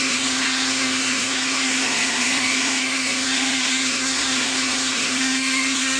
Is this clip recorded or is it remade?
remade